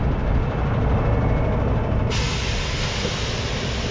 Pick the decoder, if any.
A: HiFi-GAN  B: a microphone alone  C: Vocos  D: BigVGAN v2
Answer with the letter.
B